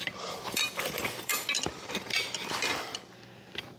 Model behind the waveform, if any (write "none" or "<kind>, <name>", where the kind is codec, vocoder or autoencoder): vocoder, BigVGAN v2